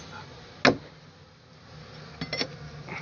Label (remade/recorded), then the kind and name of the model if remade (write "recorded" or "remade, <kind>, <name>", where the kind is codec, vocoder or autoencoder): recorded